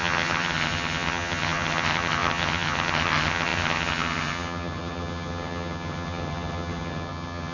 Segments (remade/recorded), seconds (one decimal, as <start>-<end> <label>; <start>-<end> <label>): 0.0-7.5 remade